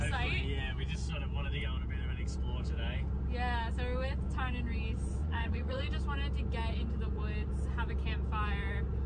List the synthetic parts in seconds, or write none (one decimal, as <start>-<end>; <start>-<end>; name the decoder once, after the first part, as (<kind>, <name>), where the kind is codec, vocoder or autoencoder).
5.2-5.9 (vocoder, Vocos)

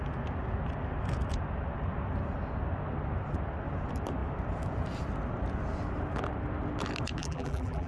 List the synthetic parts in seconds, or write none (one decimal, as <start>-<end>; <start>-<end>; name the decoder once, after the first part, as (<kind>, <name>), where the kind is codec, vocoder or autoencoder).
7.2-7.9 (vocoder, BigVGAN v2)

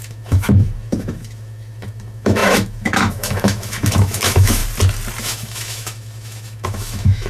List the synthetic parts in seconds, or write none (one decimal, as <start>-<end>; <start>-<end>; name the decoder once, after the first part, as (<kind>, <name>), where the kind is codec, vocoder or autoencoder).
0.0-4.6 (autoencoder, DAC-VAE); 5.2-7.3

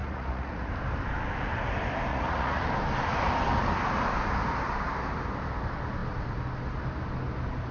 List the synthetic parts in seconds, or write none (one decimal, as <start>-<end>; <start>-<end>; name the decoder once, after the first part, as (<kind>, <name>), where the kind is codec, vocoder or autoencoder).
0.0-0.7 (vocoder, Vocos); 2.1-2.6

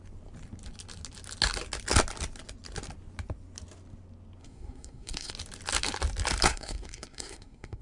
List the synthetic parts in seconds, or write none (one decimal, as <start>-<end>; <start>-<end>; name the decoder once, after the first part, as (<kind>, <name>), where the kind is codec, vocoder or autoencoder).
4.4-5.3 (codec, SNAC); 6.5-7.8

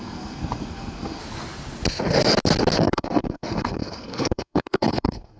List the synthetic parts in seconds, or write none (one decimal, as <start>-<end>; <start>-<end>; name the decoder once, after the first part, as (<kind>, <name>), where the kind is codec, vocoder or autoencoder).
0.0-1.2 (codec, SNAC); 2.8-5.4

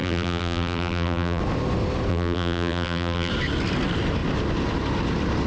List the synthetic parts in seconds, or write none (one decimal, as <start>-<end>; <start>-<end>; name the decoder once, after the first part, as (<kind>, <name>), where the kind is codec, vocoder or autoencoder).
0.0-1.4 (vocoder, BigVGAN v2); 2.1-3.3

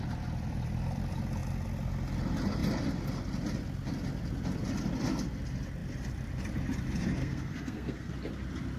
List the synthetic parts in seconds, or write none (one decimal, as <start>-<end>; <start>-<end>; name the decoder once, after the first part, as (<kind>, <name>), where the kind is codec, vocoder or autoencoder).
7.2-8.1 (codec, SNAC)